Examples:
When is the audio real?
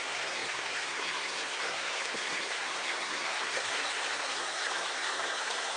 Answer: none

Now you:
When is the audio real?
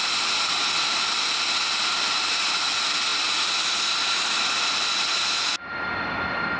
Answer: 0.0-6.6